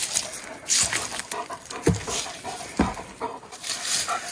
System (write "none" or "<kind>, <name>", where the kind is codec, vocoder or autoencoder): none